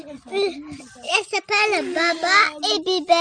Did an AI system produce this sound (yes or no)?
no